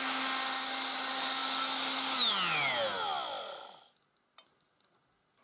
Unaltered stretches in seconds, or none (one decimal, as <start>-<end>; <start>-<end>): 0.0-5.4